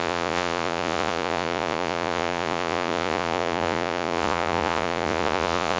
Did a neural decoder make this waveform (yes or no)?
yes